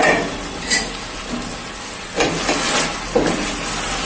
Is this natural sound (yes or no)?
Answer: yes